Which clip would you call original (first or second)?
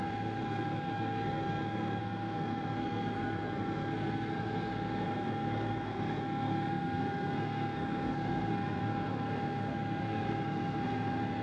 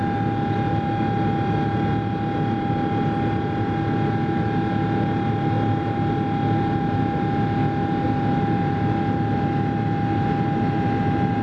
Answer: second